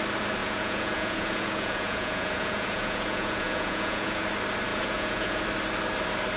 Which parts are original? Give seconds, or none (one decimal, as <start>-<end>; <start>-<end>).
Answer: 0.0-0.4; 4.2-4.7; 5.4-6.4